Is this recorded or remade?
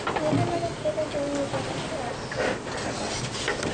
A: recorded